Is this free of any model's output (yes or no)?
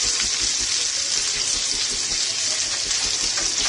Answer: yes